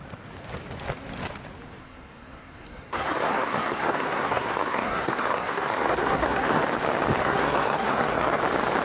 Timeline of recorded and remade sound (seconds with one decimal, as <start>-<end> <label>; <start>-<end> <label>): 0.0-1.8 recorded; 1.8-6.6 remade; 6.6-7.2 recorded; 7.2-8.4 remade; 8.4-8.8 recorded